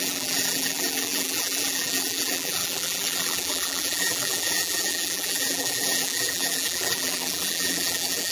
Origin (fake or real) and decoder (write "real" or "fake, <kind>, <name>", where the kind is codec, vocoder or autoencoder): fake, vocoder, BigVGAN v2